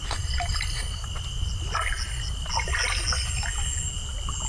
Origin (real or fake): real